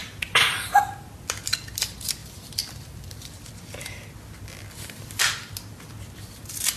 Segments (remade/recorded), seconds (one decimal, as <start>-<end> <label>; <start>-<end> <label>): 0.0-0.8 remade; 0.8-2.2 recorded; 2.2-3.5 remade; 3.5-6.8 recorded